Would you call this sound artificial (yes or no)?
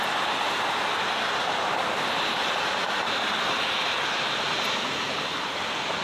no